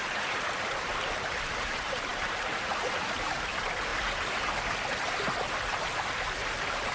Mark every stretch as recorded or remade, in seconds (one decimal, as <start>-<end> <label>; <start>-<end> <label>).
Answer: 0.0-3.9 remade; 3.9-5.8 recorded; 5.8-6.9 remade